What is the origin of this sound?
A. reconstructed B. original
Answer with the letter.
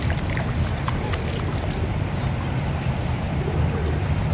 B